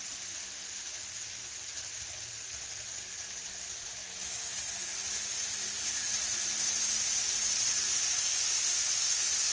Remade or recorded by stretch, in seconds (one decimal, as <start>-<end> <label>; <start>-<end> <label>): 0.0-4.0 recorded; 4.0-4.6 remade; 4.6-9.5 recorded

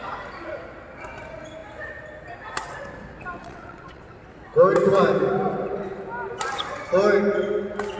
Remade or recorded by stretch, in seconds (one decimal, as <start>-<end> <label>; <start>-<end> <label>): 0.0-3.4 recorded; 3.4-4.0 remade; 4.0-8.0 recorded

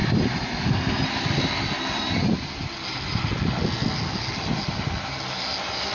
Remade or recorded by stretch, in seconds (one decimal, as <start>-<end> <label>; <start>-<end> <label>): 0.0-5.9 recorded

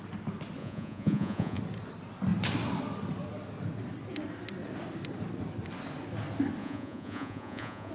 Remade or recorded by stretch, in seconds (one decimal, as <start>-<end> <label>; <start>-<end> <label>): 0.0-0.6 recorded; 0.6-1.6 remade; 1.6-6.6 recorded; 6.6-7.9 remade

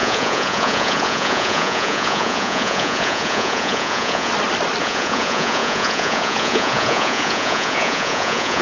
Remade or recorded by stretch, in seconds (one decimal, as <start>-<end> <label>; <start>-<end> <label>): 0.0-4.3 remade; 4.3-4.8 recorded; 4.8-8.6 remade

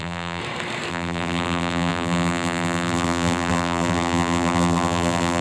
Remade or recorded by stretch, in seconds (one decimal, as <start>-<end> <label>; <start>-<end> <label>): 0.0-0.4 remade; 0.4-0.9 recorded; 0.9-5.4 remade

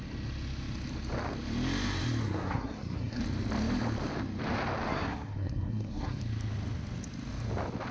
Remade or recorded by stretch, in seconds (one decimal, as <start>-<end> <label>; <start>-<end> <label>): 0.0-2.2 recorded; 2.2-3.2 remade; 3.2-4.9 recorded; 4.9-6.2 remade; 6.2-7.9 recorded

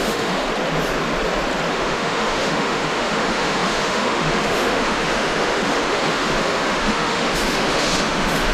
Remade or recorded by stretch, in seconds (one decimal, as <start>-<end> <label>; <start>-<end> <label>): 0.0-0.4 remade; 0.4-1.7 recorded; 1.7-8.5 remade